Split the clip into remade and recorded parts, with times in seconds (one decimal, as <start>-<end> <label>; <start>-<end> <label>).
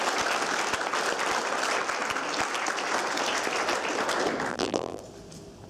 0.0-4.5 recorded; 4.5-5.0 remade; 5.0-5.7 recorded